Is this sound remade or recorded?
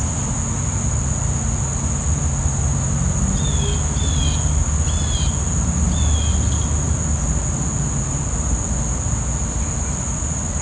recorded